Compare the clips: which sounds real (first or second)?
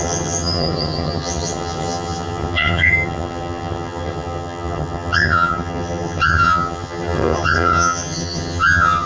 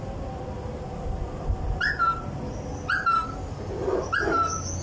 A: second